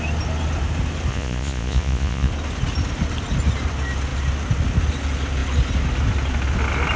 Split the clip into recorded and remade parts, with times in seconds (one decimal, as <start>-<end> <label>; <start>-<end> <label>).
0.0-1.1 recorded; 1.1-2.3 remade; 2.3-7.0 recorded